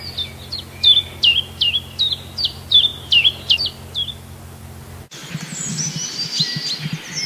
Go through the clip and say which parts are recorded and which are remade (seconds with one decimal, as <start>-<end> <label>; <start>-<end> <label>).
0.0-7.3 recorded